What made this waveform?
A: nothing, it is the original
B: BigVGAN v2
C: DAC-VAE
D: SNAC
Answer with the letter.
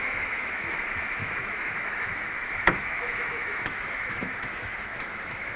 C